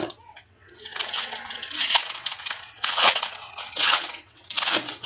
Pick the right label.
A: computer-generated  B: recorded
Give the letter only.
A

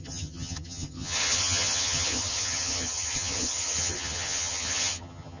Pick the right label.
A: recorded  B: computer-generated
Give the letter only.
B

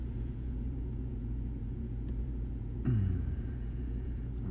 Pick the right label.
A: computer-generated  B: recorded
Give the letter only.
A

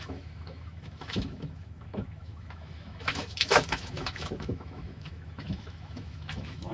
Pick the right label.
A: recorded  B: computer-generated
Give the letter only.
B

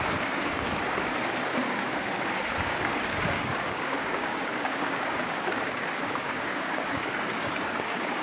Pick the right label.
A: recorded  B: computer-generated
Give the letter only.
B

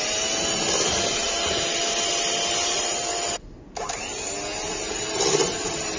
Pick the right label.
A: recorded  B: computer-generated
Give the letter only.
A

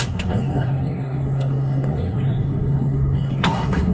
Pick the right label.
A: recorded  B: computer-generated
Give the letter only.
B